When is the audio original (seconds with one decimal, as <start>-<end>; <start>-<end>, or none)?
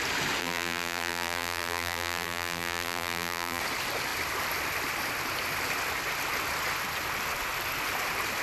0.0-0.4; 3.6-8.4